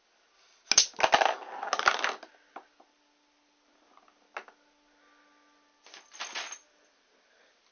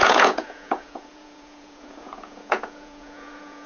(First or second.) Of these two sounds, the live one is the first